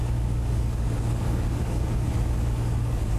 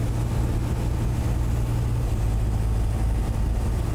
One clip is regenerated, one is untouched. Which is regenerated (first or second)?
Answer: first